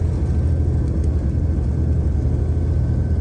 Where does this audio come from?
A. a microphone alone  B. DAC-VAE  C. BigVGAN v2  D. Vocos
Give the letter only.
A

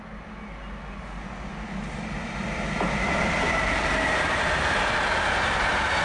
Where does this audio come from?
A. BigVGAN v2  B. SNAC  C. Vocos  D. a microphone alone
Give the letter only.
D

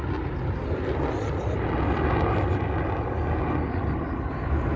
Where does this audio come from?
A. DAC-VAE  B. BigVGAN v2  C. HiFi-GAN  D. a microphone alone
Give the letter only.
D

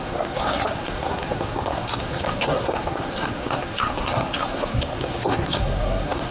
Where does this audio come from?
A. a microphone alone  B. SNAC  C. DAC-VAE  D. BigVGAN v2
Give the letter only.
B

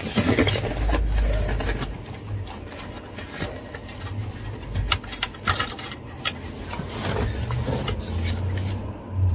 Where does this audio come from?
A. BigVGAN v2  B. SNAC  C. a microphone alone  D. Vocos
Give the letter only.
C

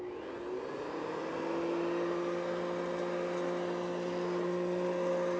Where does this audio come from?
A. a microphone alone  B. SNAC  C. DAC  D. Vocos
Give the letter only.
A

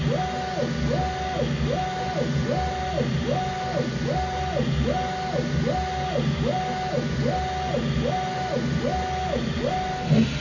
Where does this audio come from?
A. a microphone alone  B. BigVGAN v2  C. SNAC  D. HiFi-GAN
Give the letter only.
A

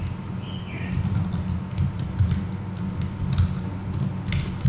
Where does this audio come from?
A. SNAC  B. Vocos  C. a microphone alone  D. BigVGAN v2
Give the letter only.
C